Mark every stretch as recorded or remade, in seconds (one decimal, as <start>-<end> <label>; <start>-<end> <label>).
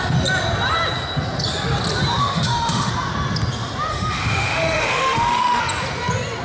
0.0-2.2 recorded; 2.2-2.9 remade; 2.9-3.9 recorded; 3.9-5.6 remade; 5.6-6.4 recorded